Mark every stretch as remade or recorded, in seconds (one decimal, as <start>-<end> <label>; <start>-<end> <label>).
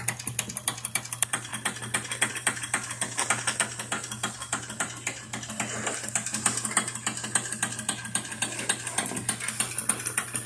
0.0-10.5 recorded